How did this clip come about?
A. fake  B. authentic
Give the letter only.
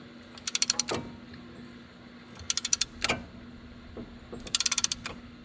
B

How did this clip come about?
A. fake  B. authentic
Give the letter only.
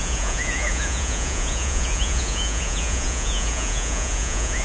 A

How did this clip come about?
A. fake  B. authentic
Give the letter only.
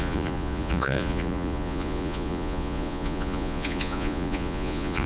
A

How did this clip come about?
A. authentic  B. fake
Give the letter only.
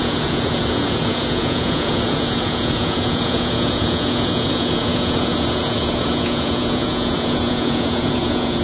B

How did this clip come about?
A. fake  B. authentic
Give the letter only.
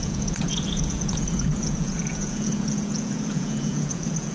A